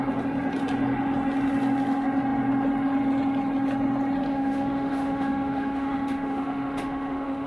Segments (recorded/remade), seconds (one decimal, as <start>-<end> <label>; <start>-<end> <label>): 0.0-4.3 recorded; 4.3-7.5 remade